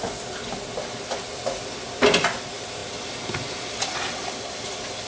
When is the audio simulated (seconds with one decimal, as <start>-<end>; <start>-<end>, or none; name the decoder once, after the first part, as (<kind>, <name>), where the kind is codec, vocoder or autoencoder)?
none